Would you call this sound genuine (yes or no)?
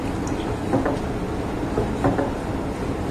yes